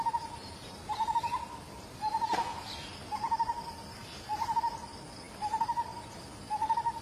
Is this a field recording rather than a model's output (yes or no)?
yes